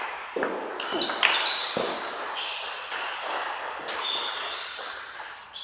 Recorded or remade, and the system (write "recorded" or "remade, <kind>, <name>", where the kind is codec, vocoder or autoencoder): recorded